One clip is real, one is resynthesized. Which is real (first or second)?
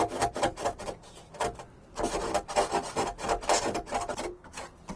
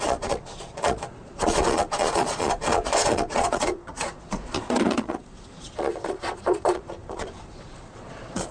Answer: first